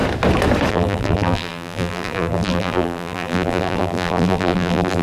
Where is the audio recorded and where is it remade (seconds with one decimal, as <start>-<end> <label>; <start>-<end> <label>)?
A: 0.0-0.7 recorded; 0.7-5.0 remade